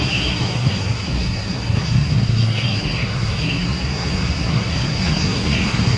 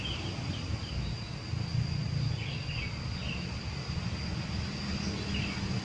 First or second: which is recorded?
second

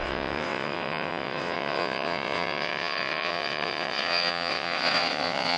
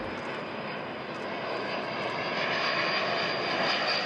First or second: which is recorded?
second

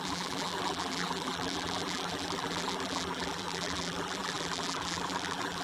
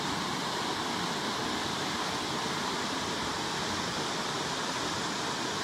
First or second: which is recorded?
second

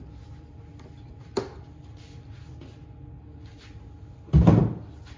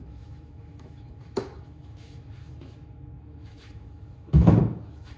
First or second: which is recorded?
first